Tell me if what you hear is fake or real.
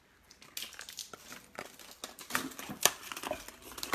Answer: real